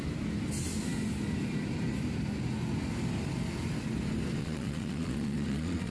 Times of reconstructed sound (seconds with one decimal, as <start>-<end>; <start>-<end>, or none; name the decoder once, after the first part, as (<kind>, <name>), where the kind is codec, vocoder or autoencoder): 4.4-5.9 (vocoder, Vocos)